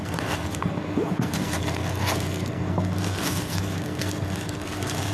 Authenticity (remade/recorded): remade